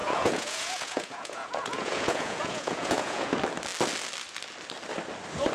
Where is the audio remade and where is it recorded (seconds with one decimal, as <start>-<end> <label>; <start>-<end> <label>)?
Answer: 0.0-3.3 remade; 3.3-5.5 recorded

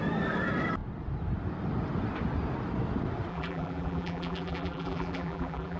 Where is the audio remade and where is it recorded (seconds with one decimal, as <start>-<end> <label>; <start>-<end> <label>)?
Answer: 0.0-3.3 recorded; 3.3-5.8 remade

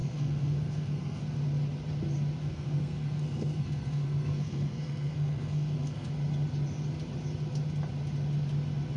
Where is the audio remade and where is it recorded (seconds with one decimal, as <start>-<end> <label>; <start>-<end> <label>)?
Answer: 0.0-1.2 remade; 1.2-2.4 recorded; 2.4-6.1 remade; 6.1-9.0 recorded

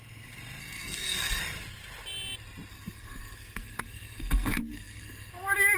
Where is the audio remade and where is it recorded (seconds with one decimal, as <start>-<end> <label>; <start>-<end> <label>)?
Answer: 0.0-0.6 recorded; 0.6-1.4 remade; 1.4-2.7 recorded; 2.7-5.3 remade; 5.3-5.8 recorded

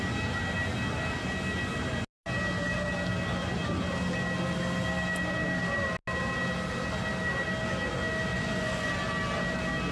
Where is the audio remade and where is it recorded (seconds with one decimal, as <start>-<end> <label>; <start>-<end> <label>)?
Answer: 0.0-8.3 recorded; 8.3-8.9 remade; 8.9-9.9 recorded